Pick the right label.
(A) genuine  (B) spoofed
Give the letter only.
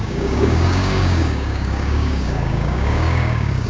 B